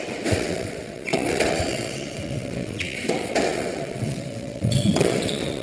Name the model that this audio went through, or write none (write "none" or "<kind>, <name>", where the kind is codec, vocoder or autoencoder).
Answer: vocoder, WaveNeXt